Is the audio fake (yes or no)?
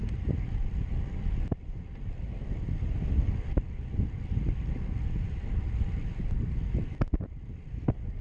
no